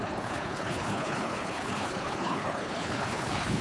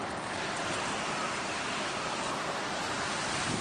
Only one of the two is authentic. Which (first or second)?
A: second